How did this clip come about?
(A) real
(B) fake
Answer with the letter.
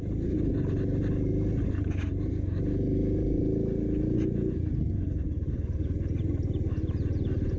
A